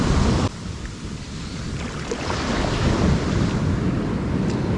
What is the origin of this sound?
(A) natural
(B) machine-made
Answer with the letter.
A